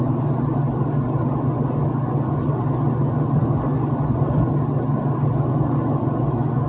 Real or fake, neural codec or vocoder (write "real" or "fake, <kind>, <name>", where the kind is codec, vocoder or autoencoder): real